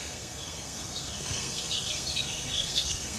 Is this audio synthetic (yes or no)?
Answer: yes